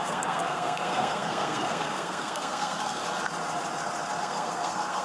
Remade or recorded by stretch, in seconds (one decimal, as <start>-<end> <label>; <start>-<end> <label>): 0.0-3.0 remade; 3.0-4.2 recorded; 4.2-5.0 remade